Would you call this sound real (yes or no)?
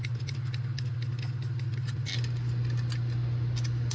yes